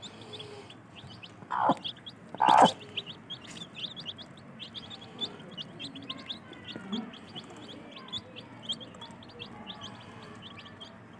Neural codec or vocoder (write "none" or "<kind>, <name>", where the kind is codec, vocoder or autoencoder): none